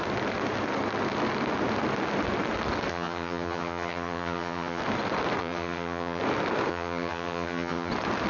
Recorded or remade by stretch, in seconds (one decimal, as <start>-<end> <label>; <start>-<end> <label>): 0.0-2.9 recorded; 2.9-4.8 remade; 4.8-5.4 recorded; 5.4-6.2 remade; 6.2-6.7 recorded; 6.7-7.9 remade; 7.9-8.3 recorded